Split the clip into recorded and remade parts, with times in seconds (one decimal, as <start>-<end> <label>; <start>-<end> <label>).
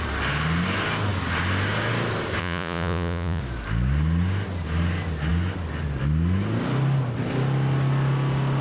0.0-2.4 recorded; 2.4-3.4 remade; 3.4-8.6 recorded